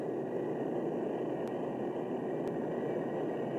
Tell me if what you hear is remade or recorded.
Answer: recorded